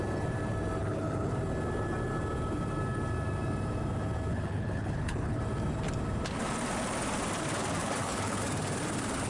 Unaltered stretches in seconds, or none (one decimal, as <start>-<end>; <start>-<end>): 0.0-0.8; 1.3-4.3; 5.4-7.8; 8.4-9.3